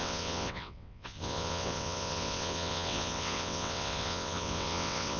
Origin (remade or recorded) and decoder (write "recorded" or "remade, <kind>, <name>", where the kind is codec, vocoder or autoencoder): remade, vocoder, WaveNeXt